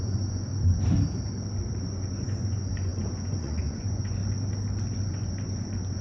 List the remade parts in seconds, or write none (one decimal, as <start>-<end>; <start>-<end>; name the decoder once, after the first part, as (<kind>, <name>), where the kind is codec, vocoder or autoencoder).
0.0-0.5 (vocoder, Vocos); 1.8-4.2; 5.1-6.0